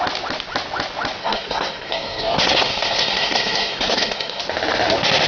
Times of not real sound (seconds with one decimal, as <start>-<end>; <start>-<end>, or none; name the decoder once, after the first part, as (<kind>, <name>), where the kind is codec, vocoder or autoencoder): 1.2-4.4 (codec, SNAC)